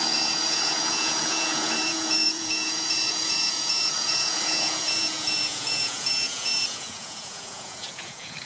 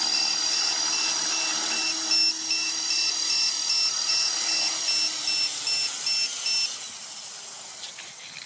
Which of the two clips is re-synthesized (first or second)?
first